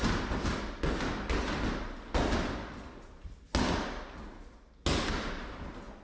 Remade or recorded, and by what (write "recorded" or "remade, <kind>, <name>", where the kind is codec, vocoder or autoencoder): recorded